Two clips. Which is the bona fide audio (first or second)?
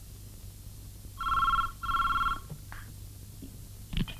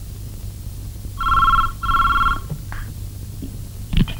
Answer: first